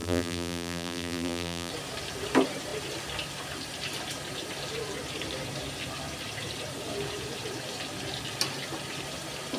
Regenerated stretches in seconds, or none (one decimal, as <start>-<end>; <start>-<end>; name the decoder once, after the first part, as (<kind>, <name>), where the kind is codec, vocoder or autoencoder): 0.0-1.7 (vocoder, BigVGAN v2)